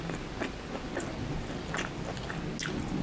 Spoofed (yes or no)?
no